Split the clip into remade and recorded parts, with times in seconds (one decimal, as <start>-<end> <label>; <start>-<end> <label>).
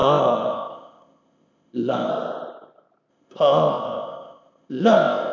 0.0-2.1 remade; 2.1-3.1 recorded; 3.1-5.3 remade